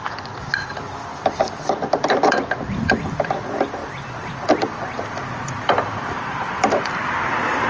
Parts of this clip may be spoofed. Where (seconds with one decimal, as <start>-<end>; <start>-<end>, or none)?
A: 1.1-2.9; 3.8-7.1